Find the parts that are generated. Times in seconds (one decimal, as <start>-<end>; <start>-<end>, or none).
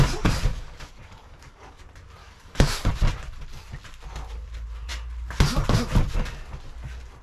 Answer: 0.5-1.8; 2.2-2.9